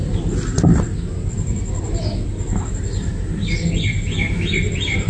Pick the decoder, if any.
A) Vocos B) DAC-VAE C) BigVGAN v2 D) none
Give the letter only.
D